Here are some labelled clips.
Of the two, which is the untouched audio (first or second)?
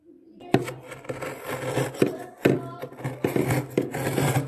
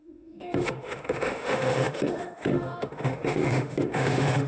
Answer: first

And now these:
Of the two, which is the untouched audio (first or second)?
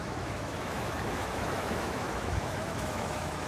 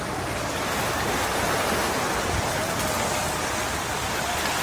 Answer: second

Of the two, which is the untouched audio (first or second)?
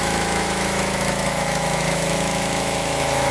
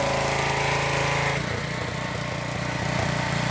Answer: second